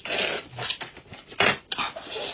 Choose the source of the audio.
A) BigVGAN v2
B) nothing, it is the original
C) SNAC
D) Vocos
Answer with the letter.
B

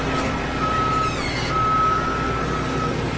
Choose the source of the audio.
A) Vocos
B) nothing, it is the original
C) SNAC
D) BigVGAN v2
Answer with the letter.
B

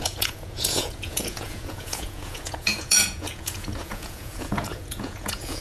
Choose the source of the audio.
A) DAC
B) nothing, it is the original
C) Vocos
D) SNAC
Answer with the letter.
C